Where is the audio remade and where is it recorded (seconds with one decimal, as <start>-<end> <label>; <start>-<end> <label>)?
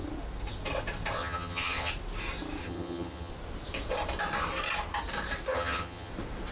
0.0-1.2 recorded; 1.2-1.9 remade; 1.9-2.6 recorded; 2.6-3.3 remade; 3.3-5.5 recorded; 5.5-6.1 remade; 6.1-6.5 recorded